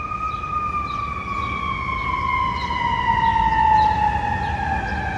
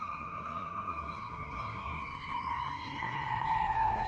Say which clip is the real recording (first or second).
first